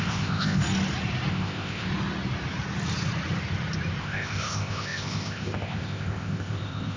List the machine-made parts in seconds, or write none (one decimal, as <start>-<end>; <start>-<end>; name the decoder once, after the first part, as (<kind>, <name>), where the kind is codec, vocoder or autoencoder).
0.0-0.6 (codec, ZipCodec); 1.3-1.9; 4.0-7.0